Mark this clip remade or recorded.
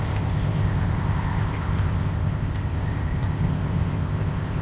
remade